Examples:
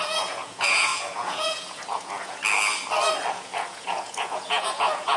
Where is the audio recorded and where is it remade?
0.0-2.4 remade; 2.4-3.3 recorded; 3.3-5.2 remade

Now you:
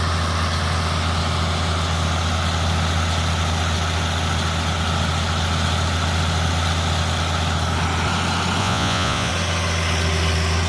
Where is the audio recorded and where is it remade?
0.0-8.6 recorded; 8.6-9.3 remade; 9.3-10.7 recorded